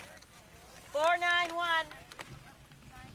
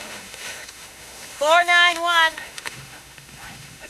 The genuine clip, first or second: first